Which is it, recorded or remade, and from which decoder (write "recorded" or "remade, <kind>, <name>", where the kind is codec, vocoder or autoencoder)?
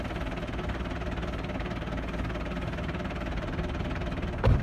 recorded